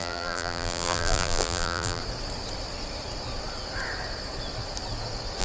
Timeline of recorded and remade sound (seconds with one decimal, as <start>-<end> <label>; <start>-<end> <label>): 0.0-2.0 remade; 2.0-5.4 recorded